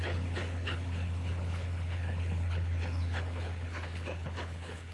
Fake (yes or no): yes